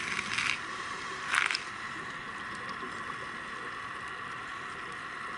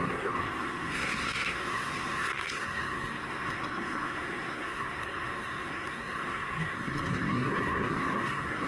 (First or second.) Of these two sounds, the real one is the first